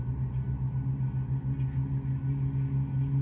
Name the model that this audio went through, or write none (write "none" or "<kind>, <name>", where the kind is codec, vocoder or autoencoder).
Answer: none